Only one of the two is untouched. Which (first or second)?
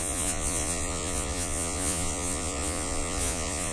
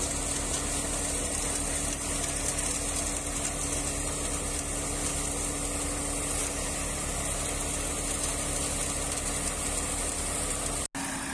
second